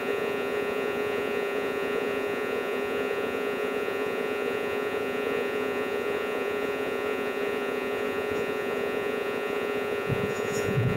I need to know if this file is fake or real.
fake